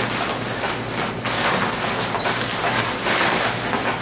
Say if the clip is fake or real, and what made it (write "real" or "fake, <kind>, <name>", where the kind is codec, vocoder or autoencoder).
real